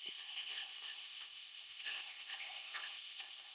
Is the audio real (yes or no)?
no